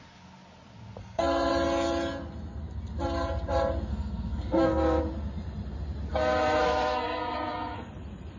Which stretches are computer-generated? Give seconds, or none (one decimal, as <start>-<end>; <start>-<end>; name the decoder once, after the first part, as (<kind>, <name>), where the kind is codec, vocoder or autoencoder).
1.0-1.5 (codec, SNAC); 3.9-5.0; 6.1-7.9